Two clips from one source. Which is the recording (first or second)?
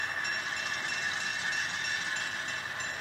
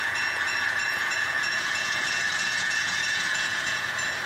first